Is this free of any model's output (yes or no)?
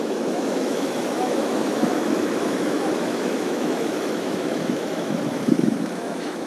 no